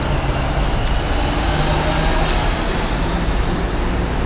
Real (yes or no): yes